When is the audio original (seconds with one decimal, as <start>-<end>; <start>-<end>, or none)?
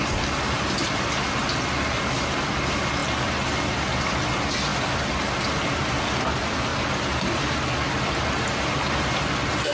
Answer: 0.0-9.7